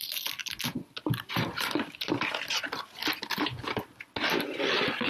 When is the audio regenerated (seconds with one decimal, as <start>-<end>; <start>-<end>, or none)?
none